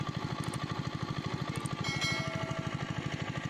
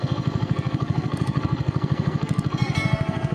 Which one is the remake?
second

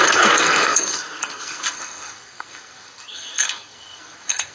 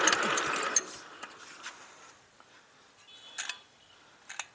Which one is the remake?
first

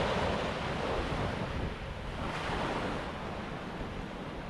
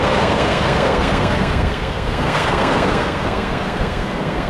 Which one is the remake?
second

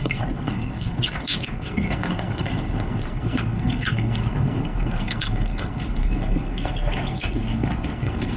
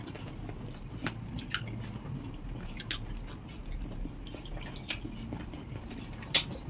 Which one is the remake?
first